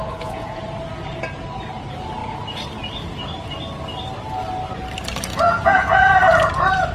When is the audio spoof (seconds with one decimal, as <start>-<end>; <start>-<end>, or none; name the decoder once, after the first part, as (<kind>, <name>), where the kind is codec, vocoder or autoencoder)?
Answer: 0.0-0.6 (vocoder, Vocos); 5.3-6.1